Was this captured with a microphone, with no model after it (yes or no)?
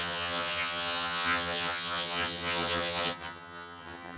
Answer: no